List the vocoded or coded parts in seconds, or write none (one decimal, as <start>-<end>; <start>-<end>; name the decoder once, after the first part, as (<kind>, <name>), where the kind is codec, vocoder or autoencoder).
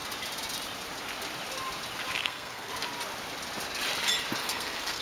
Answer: 2.2-2.7 (codec, SNAC); 4.4-5.0